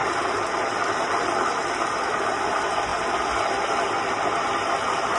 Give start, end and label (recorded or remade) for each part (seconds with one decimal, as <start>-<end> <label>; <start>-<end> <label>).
0.0-5.2 recorded